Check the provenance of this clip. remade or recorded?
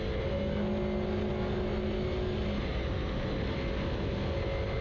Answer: recorded